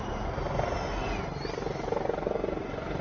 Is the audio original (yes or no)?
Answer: yes